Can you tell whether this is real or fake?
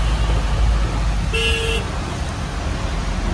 real